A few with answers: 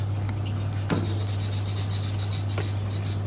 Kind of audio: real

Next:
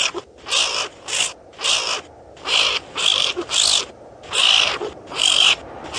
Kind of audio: real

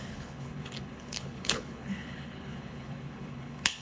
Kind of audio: fake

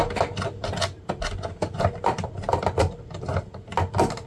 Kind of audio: real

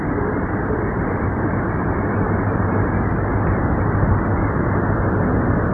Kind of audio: real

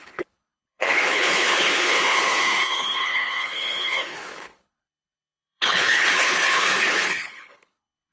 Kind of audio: fake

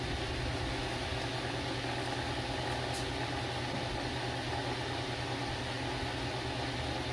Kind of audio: real